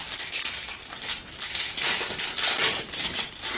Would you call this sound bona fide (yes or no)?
yes